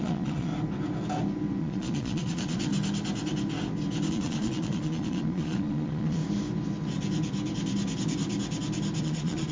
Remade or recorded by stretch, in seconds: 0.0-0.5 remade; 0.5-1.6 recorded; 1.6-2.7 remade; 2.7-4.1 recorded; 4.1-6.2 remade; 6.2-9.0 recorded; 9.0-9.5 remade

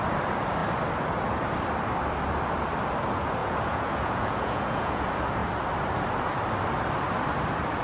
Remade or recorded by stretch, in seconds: 0.0-3.4 recorded; 3.4-5.0 remade; 5.0-7.8 recorded